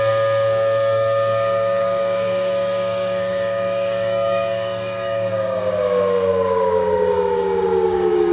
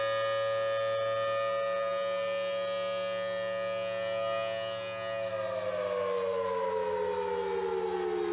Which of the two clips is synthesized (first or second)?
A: first